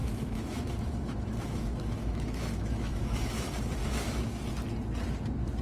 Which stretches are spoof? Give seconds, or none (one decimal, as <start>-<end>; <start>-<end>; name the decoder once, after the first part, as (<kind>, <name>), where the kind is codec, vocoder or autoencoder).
0.0-3.4 (autoencoder, DAC-VAE); 3.8-4.4